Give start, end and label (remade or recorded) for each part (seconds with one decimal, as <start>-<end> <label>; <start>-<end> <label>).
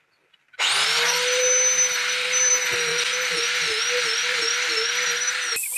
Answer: 0.0-2.9 recorded; 2.9-3.4 remade; 3.4-5.8 recorded